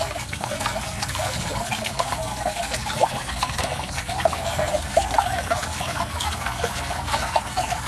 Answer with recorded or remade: remade